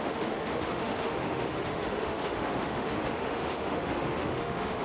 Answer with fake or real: fake